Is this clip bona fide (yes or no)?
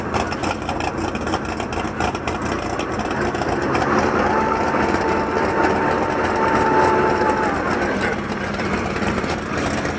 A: yes